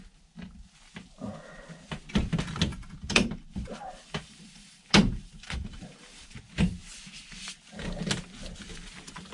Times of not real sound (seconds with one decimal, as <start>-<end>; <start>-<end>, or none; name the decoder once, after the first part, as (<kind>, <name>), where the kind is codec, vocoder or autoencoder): 2.7-6.4 (vocoder, BigVGAN v2)